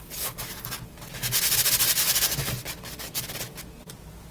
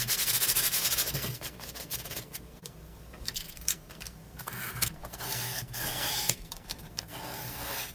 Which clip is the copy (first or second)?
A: second